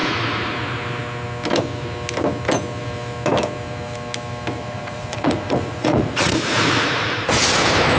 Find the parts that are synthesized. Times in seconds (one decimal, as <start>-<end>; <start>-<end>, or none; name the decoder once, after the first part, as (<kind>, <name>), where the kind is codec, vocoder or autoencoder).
0.0-0.5 (vocoder, Vocos); 4.6-7.4